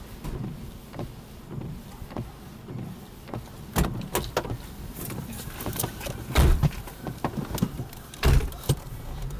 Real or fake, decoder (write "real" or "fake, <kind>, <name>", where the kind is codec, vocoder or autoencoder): real